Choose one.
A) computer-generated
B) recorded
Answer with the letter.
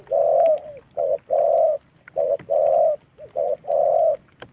B